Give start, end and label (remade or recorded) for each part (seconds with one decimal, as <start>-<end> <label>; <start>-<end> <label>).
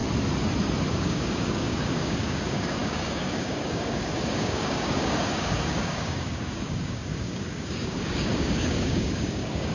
0.0-0.9 recorded; 0.9-9.7 remade